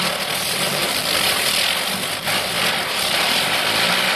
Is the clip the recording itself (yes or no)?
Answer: yes